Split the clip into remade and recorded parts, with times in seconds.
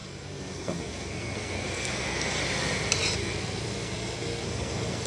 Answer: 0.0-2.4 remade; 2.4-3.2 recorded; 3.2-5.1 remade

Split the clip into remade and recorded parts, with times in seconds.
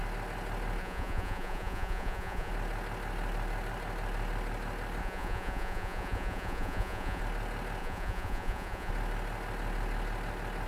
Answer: 0.0-0.8 recorded; 0.8-2.5 remade; 2.5-5.0 recorded; 5.0-7.2 remade; 7.2-7.8 recorded; 7.8-8.9 remade; 8.9-10.7 recorded